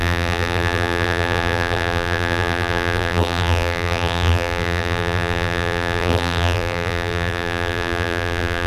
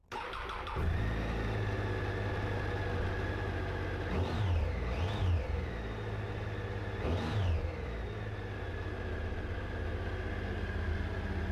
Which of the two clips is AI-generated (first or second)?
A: first